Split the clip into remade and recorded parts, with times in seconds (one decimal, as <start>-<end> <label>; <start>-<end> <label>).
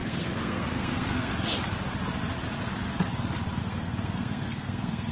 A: 0.0-1.3 remade; 1.3-3.6 recorded; 3.6-5.1 remade